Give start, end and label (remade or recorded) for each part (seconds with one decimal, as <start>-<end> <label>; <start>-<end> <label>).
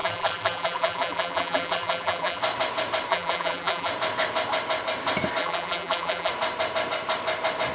0.0-2.4 remade; 2.4-3.1 recorded; 3.1-3.9 remade; 3.9-5.4 recorded; 5.4-6.3 remade; 6.3-7.7 recorded